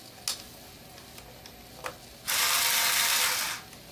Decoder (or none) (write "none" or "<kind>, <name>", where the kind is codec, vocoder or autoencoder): none